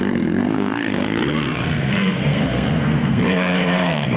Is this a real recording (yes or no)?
no